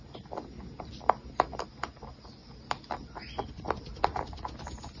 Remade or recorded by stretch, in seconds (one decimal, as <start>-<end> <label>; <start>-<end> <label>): 0.0-5.0 recorded